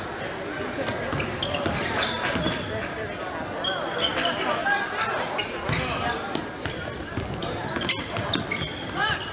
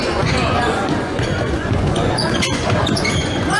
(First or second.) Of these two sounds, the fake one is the second